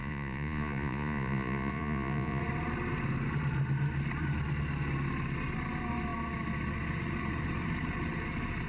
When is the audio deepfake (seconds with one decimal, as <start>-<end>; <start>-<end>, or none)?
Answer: 0.0-2.4